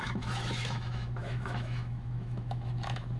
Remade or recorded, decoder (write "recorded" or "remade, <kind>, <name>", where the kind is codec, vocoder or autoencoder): remade, autoencoder, DAC-VAE